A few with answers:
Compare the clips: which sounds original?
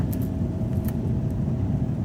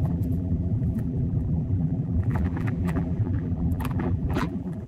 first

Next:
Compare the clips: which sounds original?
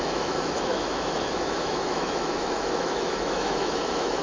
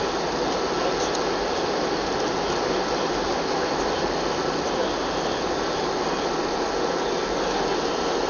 second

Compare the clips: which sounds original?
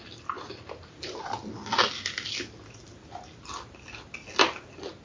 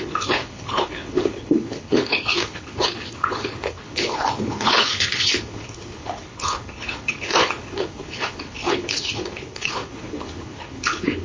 first